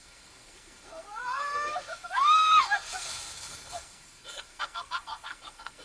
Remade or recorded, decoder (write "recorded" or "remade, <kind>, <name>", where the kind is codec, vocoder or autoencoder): remade, codec, SNAC